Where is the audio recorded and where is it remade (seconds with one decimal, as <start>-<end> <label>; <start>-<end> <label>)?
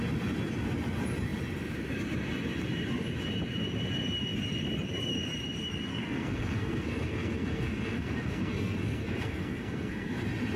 0.0-5.9 recorded; 5.9-10.2 remade; 10.2-10.6 recorded